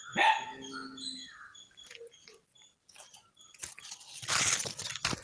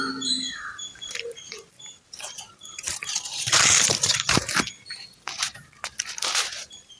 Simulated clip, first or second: second